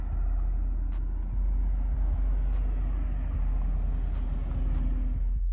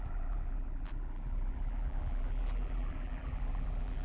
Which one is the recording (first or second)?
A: first